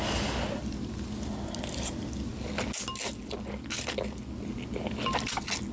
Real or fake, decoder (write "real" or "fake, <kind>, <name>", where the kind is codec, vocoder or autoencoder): real